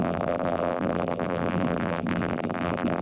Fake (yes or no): yes